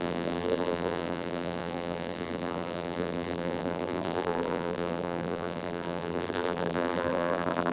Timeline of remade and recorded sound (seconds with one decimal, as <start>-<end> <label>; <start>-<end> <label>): 0.0-7.7 remade